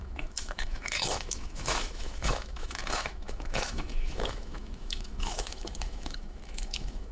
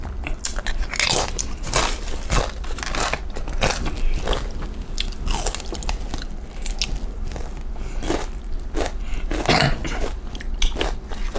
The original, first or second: second